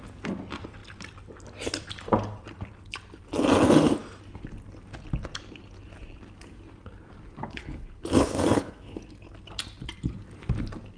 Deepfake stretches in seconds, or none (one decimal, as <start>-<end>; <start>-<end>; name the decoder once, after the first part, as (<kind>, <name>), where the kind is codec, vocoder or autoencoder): 7.4-9.0 (codec, HILCodec)